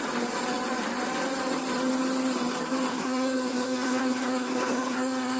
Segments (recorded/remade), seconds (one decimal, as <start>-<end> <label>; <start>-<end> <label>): 0.0-2.9 recorded; 2.9-5.4 remade